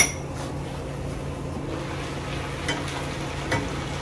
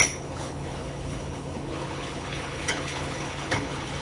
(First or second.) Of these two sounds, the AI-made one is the second